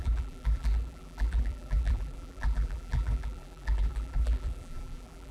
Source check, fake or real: fake